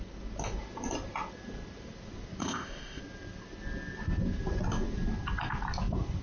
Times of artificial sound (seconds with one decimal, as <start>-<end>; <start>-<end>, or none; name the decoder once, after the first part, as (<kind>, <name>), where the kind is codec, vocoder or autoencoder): 2.4-3.0 (codec, ZipCodec)